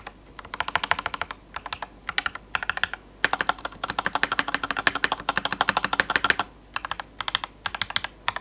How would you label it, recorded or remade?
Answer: recorded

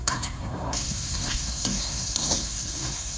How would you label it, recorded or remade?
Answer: remade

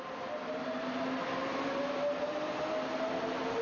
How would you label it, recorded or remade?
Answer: recorded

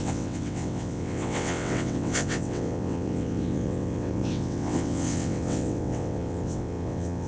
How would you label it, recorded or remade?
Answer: remade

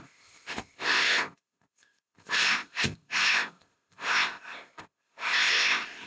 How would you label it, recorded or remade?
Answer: remade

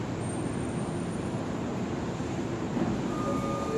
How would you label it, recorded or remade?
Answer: recorded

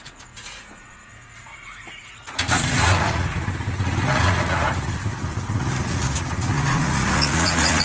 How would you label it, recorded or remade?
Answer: remade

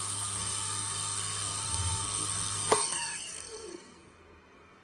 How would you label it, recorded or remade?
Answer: remade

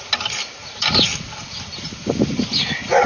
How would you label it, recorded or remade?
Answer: recorded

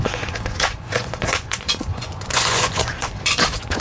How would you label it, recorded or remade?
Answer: remade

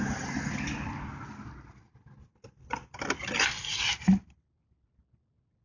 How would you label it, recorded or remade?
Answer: recorded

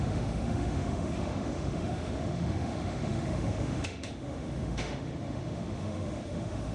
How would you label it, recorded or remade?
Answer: remade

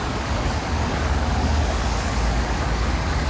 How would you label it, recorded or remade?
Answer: remade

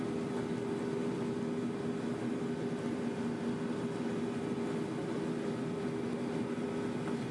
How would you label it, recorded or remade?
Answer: recorded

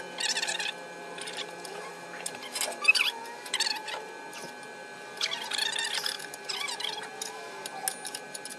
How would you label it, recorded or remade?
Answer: recorded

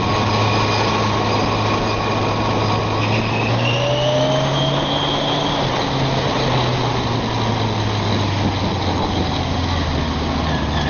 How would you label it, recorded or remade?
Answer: recorded